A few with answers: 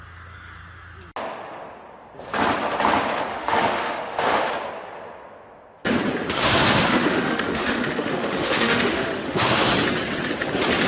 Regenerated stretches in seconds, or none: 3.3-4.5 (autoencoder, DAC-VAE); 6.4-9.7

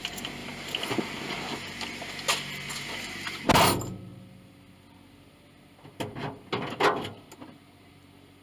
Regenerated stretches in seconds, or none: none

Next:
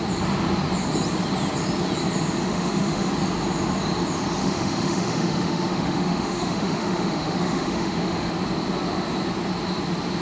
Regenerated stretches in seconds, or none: 2.4-3.1 (autoencoder, DAC-VAE); 4.4-8.3

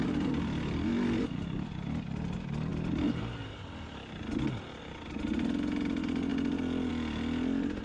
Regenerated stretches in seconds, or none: none

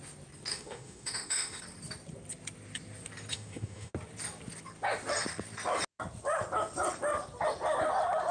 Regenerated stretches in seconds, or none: 0.5-1.6 (autoencoder, DAC-VAE); 3.3-3.9

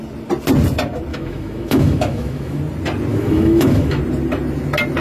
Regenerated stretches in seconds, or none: 1.1-2.6 (autoencoder, DAC-VAE); 3.1-4.0

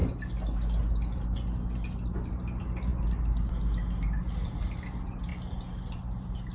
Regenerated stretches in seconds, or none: none

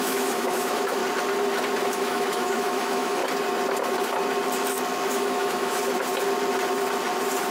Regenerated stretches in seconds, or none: 0.0-1.0 (autoencoder, DAC-VAE); 1.9-3.2; 5.1-5.8